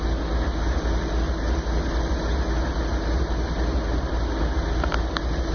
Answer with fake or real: real